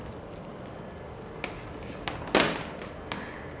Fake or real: real